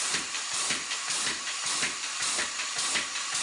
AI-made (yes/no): yes